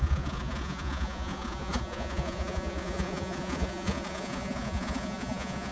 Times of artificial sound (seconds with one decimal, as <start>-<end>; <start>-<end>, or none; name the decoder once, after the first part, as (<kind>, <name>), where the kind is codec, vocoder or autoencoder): 0.0-5.7 (vocoder, Vocos)